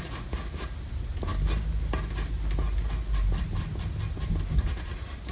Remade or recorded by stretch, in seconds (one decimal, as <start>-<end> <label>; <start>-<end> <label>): 0.0-5.3 recorded